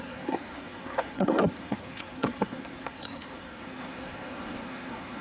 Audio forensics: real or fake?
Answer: fake